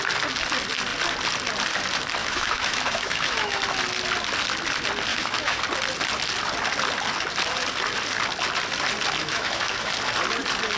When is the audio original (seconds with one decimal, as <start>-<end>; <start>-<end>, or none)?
0.0-2.2; 3.6-5.1; 5.6-9.2; 9.9-10.8